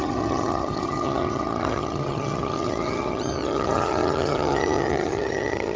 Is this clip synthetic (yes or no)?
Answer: yes